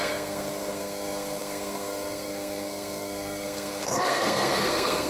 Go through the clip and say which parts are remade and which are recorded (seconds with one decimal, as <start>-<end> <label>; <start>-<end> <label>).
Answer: 0.0-5.1 remade